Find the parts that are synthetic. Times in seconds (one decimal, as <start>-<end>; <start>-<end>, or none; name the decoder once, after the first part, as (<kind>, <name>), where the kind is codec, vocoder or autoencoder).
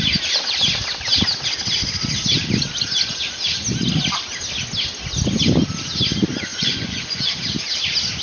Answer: 6.5-7.3 (vocoder, Vocos)